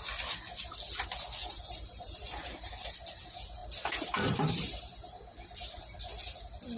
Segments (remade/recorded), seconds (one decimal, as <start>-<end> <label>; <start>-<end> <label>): 0.0-1.4 recorded; 1.4-2.7 remade; 2.7-3.6 recorded; 3.6-4.8 remade; 4.8-6.8 recorded